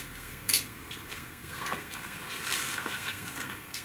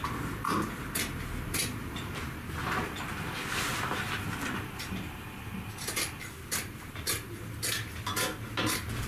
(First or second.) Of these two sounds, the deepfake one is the first